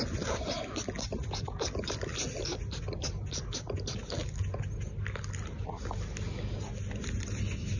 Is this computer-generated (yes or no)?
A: no